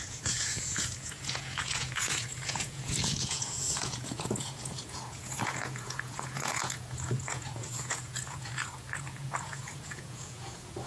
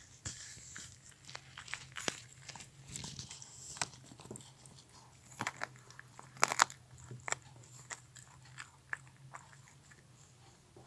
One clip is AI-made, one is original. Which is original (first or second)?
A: second